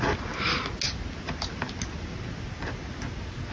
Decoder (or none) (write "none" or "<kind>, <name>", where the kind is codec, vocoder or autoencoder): none